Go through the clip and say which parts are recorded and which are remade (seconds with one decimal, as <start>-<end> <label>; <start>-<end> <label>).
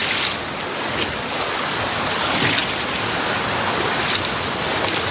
0.0-5.1 recorded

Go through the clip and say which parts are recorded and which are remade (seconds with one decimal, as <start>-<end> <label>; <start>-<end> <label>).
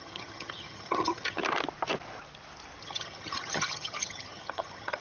0.0-1.4 remade; 1.4-2.8 recorded; 2.8-5.0 remade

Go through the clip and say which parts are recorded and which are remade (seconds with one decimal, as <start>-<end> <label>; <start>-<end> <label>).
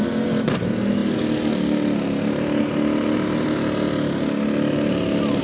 0.0-5.4 recorded